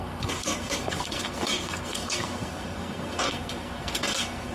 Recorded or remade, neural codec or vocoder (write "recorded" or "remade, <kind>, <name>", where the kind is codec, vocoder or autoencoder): remade, codec, SNAC